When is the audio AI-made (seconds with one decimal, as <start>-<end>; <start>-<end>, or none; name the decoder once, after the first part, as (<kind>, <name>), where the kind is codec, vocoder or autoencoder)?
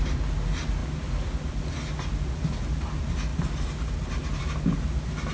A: none